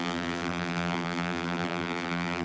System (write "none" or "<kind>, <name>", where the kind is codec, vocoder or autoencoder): vocoder, BigVGAN v2